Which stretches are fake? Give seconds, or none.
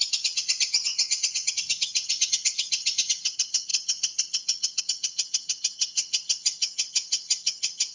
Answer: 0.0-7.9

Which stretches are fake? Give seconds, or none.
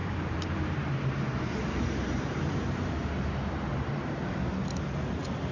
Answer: 0.0-3.3; 3.7-4.4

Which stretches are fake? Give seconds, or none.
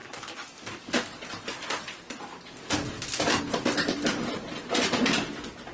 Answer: none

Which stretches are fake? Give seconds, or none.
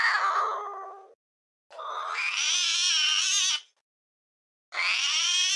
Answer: none